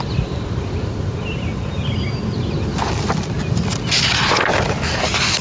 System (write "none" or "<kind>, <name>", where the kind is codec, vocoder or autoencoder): none